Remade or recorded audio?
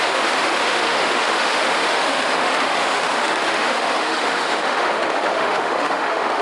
remade